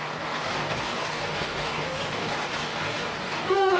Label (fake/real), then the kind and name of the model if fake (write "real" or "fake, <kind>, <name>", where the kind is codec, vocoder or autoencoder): fake, codec, DAC